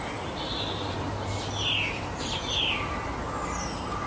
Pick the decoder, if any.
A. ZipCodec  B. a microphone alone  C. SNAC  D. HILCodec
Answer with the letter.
B